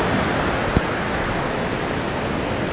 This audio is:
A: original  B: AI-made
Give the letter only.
A